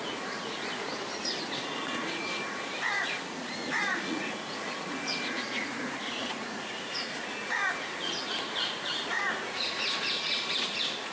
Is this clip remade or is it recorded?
remade